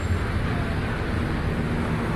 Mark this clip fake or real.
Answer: real